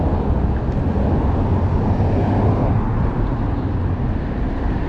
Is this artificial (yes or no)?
no